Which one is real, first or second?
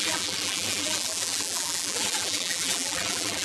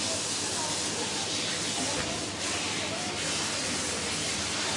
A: second